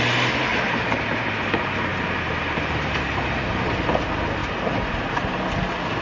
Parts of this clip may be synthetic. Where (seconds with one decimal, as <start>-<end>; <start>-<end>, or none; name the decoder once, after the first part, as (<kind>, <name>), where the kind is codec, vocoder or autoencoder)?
0.5-1.3 (vocoder, BigVGAN v2); 1.9-3.8; 4.4-5.5